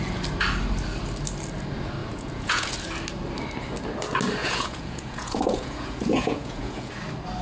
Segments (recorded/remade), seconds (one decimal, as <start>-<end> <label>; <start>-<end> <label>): 0.0-2.0 recorded; 2.0-2.7 remade; 2.7-4.4 recorded; 4.4-6.9 remade; 6.9-7.4 recorded